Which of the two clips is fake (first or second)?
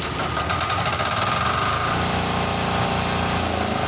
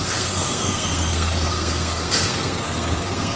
second